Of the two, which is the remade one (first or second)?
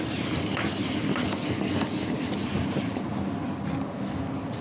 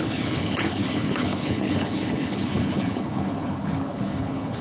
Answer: second